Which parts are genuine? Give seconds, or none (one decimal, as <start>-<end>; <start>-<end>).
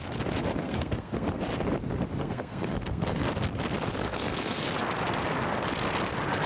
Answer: 0.0-0.6; 1.4-2.2; 3.3-4.0; 4.6-6.5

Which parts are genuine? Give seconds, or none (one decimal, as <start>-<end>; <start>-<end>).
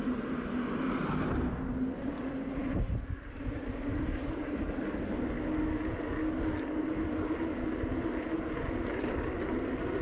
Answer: 0.0-2.6; 4.6-10.0